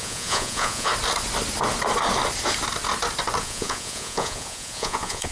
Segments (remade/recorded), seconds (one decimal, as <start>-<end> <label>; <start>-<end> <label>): 0.0-0.9 remade; 0.9-3.4 recorded; 3.4-5.3 remade